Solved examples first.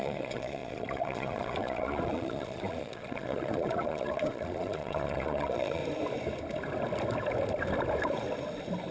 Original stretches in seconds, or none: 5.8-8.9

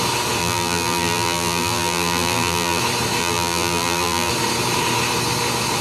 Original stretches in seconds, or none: 0.0-0.4; 2.8-3.2; 4.3-5.8